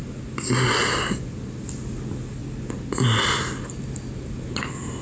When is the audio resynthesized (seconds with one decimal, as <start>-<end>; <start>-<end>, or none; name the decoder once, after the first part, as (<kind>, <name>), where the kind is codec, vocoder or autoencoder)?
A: none